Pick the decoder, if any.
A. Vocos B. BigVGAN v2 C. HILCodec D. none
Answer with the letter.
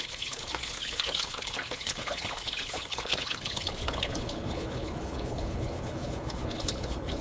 C